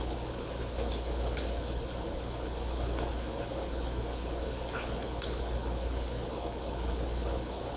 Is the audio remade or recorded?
remade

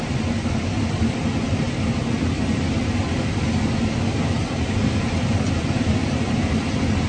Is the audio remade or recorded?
recorded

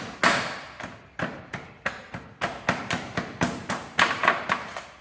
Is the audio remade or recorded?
recorded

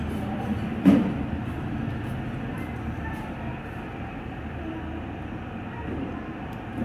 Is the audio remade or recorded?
recorded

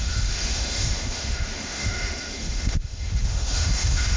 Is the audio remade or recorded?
remade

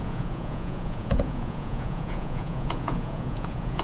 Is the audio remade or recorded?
remade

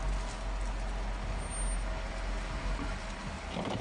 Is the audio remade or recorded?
recorded